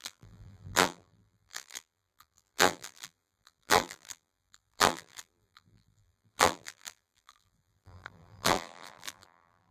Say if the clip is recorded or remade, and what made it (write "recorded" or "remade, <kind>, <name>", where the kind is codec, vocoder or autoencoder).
remade, vocoder, BigVGAN v2